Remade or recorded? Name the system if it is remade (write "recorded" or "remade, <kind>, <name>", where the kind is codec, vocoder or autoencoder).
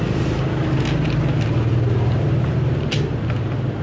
recorded